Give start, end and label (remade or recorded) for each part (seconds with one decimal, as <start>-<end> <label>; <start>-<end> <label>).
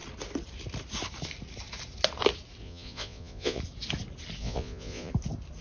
0.0-2.6 recorded; 2.6-3.6 remade; 3.6-4.4 recorded; 4.4-5.1 remade; 5.1-5.6 recorded